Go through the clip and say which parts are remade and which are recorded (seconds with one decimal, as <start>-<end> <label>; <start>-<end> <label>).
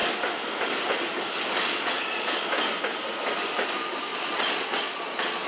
0.0-1.6 recorded; 1.6-2.5 remade; 2.5-4.1 recorded; 4.1-5.5 remade